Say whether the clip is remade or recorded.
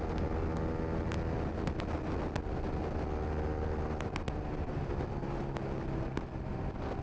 recorded